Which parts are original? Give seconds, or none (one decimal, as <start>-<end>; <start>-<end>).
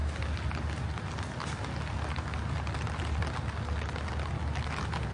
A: 0.0-5.1